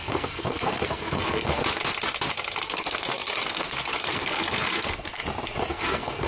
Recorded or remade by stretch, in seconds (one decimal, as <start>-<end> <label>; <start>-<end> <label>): 0.0-1.6 remade; 1.6-2.6 recorded; 2.6-5.2 remade; 5.2-5.7 recorded; 5.7-6.3 remade